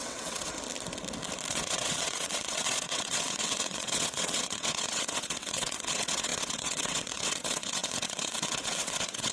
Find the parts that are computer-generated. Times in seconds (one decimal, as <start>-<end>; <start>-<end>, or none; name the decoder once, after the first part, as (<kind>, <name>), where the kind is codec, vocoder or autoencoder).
0.0-0.5 (vocoder, WaveNeXt); 1.5-9.3